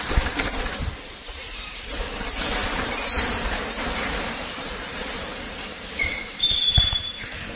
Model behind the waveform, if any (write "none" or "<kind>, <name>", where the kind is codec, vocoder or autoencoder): vocoder, BigVGAN v2